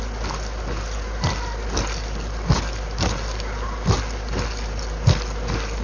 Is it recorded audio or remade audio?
recorded